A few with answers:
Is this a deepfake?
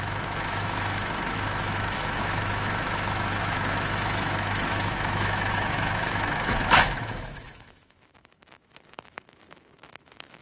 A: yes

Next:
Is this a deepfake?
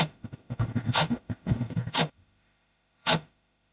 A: yes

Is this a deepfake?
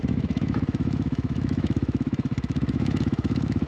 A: yes